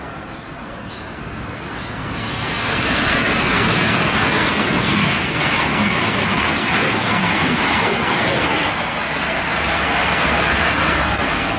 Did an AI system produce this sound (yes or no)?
yes